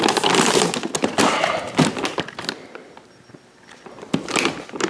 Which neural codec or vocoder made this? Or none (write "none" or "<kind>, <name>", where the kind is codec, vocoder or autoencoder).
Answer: none